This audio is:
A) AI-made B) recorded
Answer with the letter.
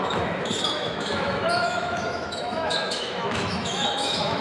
A